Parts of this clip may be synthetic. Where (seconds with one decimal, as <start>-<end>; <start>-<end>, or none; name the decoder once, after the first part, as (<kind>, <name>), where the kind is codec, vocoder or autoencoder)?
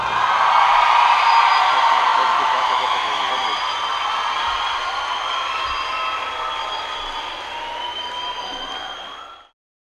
2.1-3.3 (autoencoder, DAC-VAE)